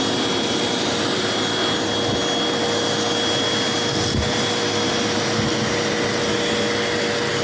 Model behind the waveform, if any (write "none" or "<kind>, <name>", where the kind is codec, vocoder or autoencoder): none